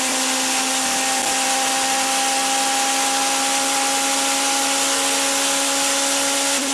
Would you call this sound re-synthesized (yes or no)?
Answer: no